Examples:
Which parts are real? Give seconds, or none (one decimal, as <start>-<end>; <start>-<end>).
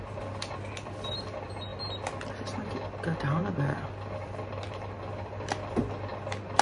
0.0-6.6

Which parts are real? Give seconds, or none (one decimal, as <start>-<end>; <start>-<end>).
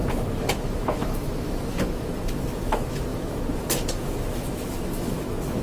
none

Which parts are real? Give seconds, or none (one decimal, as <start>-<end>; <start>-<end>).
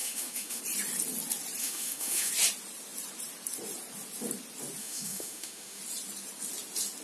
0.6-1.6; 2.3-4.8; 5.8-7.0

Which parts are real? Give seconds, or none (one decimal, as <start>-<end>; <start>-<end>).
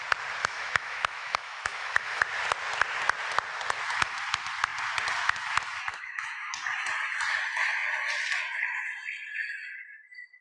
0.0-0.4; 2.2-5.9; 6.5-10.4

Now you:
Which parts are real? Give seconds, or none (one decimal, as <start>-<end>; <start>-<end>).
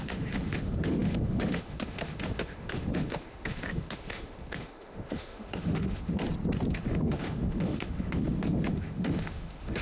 6.2-6.7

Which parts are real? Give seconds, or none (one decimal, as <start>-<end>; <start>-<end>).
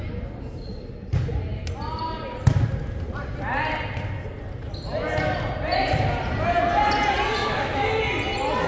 0.0-7.4; 8.0-8.7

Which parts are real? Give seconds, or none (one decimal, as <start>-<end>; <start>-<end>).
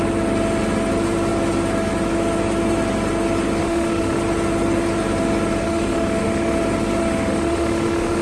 0.0-3.6; 4.2-5.6; 6.6-7.0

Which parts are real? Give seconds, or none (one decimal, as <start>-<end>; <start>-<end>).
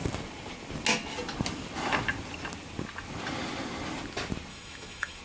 0.0-4.5